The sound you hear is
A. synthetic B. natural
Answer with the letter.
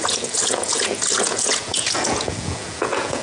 A